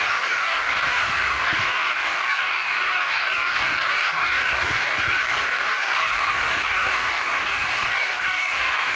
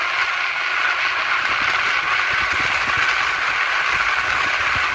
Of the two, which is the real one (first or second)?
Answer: second